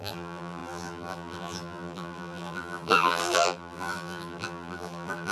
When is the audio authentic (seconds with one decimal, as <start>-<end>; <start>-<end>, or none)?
none